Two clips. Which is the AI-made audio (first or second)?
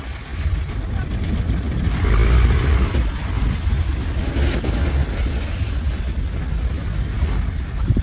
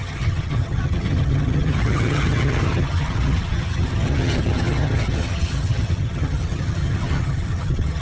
second